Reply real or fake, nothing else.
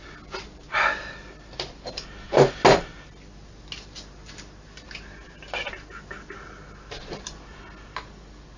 real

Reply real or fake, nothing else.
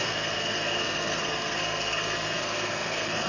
fake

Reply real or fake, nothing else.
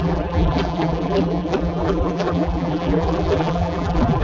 fake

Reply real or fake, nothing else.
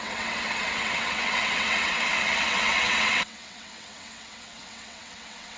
fake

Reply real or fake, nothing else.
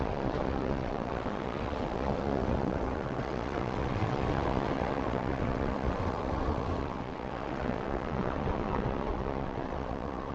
fake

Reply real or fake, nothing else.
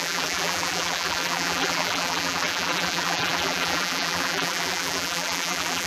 fake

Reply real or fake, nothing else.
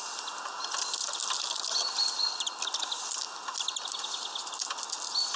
real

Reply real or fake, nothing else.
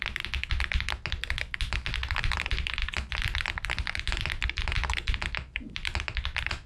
real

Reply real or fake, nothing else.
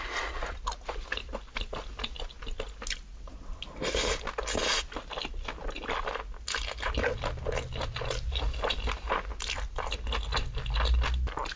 real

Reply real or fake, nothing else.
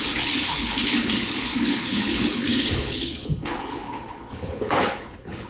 fake